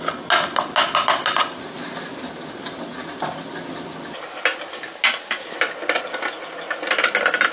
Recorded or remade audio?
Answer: recorded